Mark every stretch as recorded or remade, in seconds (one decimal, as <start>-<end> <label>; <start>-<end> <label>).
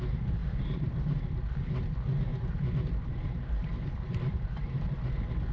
0.0-0.4 recorded; 0.4-1.2 remade; 1.2-2.3 recorded; 2.3-5.0 remade; 5.0-5.5 recorded